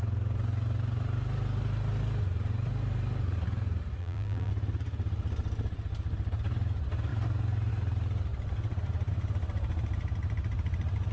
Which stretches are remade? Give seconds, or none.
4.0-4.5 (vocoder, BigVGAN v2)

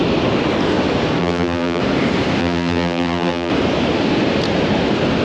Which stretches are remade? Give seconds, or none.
1.2-1.8 (vocoder, BigVGAN v2); 2.4-3.5

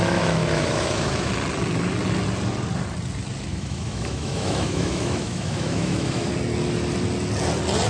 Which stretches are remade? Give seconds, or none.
0.0-1.3 (autoencoder, DAC-VAE); 3.5-6.3

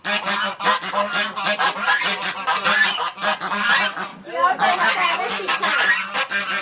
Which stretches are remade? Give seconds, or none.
none

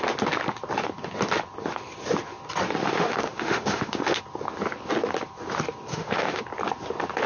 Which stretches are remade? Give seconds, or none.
2.8-4.2 (autoencoder, DAC-VAE); 5.9-6.4

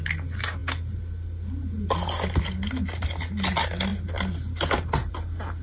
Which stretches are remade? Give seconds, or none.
none